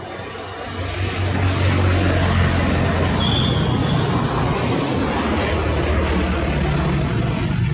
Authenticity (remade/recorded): recorded